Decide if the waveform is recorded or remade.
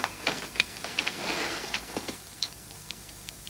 remade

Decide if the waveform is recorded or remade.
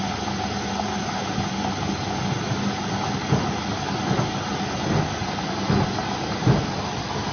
recorded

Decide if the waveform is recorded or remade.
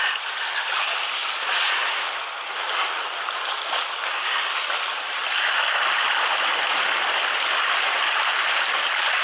recorded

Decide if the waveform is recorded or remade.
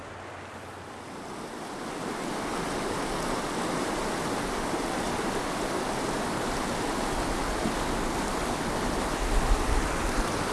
recorded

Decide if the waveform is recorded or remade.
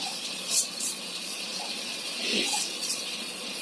remade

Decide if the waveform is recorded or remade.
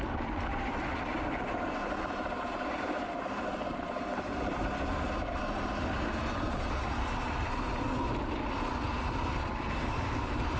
recorded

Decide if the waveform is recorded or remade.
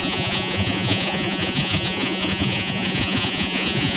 remade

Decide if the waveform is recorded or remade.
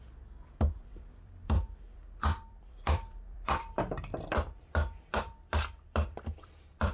remade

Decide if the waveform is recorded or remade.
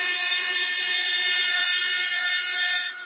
remade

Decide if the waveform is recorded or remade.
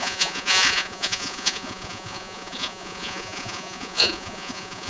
remade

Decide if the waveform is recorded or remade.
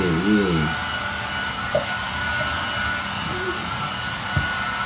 recorded